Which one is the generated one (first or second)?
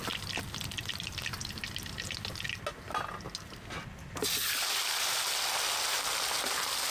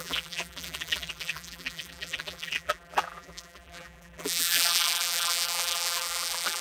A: second